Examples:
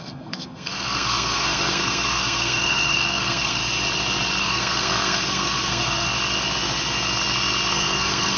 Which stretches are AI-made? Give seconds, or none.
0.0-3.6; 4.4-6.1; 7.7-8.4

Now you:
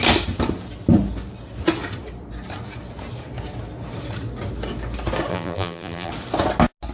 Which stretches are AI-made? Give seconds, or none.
5.3-6.1

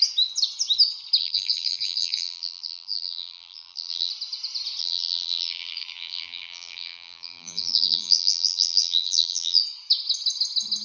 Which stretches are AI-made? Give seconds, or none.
1.2-4.1; 4.8-9.6

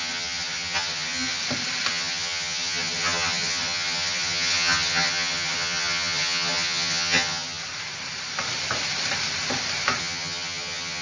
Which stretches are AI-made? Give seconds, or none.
0.0-1.4; 1.9-7.6; 10.0-11.0

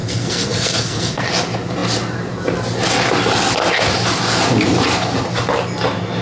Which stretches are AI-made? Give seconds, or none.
0.0-1.3

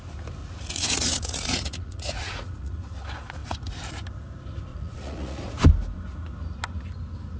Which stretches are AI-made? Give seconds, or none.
0.4-2.7; 4.7-5.5

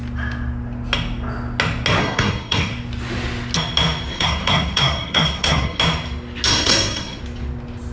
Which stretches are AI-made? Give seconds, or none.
2.0-2.7; 4.1-5.8; 6.5-7.2

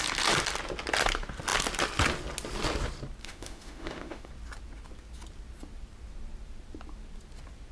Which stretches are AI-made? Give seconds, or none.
3.2-4.3